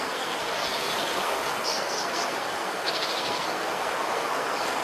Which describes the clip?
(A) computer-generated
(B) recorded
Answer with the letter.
A